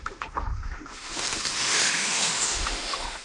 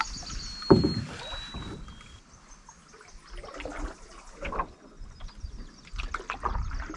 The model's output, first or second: first